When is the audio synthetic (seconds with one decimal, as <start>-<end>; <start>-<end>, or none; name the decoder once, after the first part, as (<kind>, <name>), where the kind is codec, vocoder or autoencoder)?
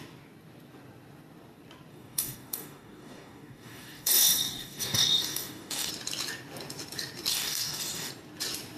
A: 1.9-5.9 (codec, DAC); 7.3-8.1